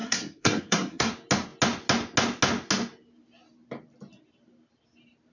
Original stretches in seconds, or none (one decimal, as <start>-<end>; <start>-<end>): 1.1-5.3